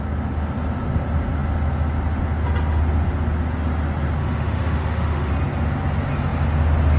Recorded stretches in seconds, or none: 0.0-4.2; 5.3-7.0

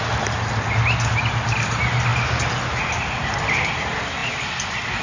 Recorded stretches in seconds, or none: 0.0-5.0

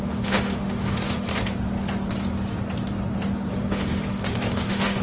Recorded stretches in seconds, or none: 1.3-3.5

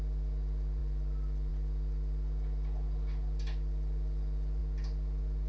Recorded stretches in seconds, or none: 0.0-5.5

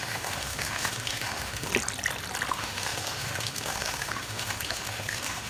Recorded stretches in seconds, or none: 1.7-2.5

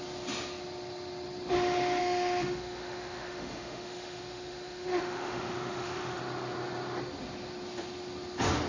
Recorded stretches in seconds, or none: 0.0-2.0; 6.2-8.7